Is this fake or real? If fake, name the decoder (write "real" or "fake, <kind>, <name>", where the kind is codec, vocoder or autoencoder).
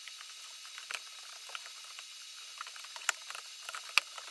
real